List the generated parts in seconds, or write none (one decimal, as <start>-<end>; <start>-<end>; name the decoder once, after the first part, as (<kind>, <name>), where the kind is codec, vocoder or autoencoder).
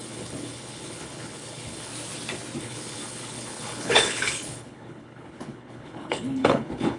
0.0-1.9 (codec, HILCodec); 2.6-7.0